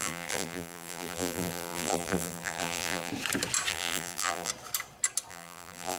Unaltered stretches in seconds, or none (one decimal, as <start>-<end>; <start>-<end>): 3.1-3.7; 4.5-5.3